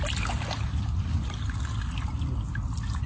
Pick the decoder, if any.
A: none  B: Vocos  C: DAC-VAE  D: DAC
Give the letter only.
A